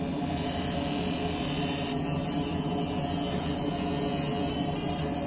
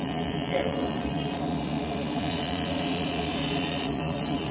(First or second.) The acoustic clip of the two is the first